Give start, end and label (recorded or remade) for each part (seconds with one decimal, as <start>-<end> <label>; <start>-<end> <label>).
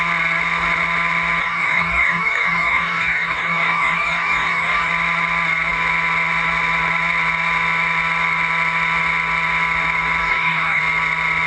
0.0-1.4 recorded; 1.4-4.9 remade; 4.9-10.2 recorded; 10.2-10.8 remade; 10.8-11.5 recorded